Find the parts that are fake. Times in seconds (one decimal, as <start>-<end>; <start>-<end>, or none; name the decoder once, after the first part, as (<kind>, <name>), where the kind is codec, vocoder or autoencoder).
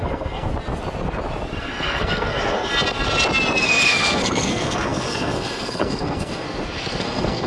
0.0-0.5 (codec, SNAC); 1.6-2.7; 3.6-7.5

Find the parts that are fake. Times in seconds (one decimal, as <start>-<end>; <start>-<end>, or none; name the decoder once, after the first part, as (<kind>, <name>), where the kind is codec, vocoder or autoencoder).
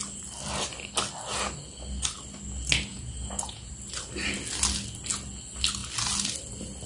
2.9-3.7 (vocoder, Vocos)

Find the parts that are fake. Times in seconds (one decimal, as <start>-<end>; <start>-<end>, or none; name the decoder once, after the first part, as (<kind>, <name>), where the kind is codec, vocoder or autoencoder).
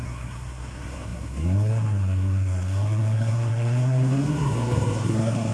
0.0-5.5 (codec, SNAC)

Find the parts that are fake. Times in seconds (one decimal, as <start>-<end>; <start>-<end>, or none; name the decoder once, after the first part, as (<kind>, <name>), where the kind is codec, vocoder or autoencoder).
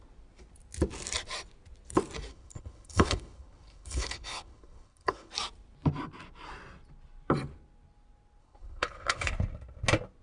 2.3-5.3 (codec, HILCodec); 8.4-9.3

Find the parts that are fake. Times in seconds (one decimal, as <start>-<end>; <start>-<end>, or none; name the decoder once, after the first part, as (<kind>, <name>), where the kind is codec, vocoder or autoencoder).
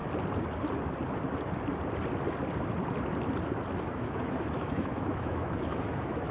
3.8-6.3 (autoencoder, DAC-VAE)